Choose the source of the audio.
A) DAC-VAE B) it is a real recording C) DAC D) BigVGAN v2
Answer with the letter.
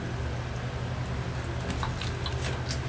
B